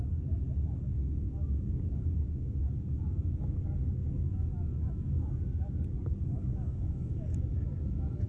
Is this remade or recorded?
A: remade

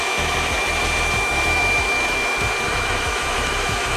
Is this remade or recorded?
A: remade